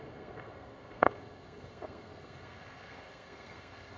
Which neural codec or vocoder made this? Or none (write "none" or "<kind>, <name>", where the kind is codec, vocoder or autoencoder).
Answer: codec, SNAC